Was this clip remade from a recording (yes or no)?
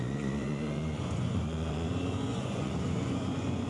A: yes